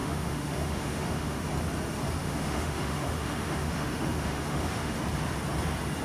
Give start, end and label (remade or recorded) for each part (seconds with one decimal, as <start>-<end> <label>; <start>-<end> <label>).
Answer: 0.0-1.4 remade; 1.4-2.2 recorded; 2.2-5.0 remade; 5.0-6.0 recorded